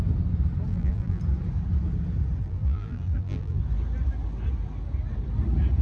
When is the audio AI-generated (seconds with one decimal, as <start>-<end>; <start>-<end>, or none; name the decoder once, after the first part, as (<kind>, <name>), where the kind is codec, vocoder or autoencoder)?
0.7-1.2 (vocoder, BigVGAN v2); 2.4-3.6